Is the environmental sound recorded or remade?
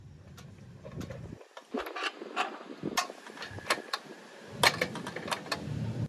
recorded